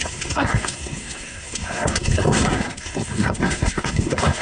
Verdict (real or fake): fake